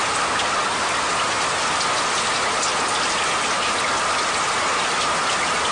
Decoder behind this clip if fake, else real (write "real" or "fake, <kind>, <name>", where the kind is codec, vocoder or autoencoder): real